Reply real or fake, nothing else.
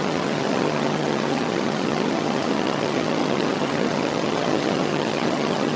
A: fake